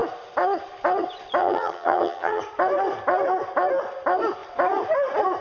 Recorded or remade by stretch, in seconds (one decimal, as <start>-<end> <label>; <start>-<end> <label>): 0.0-1.4 recorded; 1.4-2.4 remade; 2.4-5.4 recorded